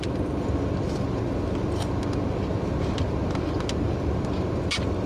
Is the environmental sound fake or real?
real